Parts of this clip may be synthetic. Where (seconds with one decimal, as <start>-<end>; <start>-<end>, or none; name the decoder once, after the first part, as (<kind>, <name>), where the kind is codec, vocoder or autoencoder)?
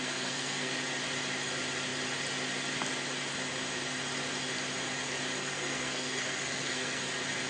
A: 0.0-0.7 (codec, SNAC); 5.4-7.0